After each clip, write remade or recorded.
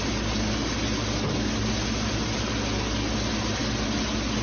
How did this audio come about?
recorded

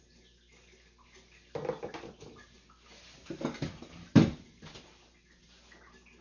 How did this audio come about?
recorded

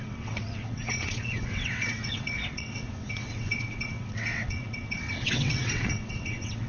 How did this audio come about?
remade